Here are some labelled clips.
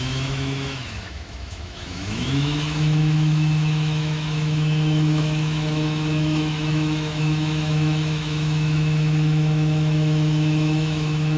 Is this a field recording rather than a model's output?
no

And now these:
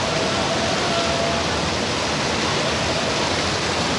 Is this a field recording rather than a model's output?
yes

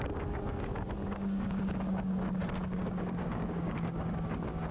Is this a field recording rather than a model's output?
no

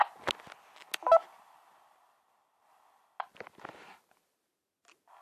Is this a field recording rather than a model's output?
yes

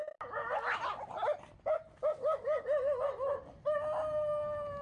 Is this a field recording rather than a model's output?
yes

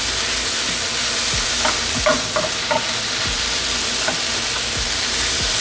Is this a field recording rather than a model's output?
yes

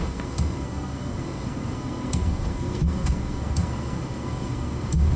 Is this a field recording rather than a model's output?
no